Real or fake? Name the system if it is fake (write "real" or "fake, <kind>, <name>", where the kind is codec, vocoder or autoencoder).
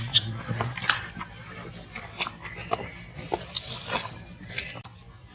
real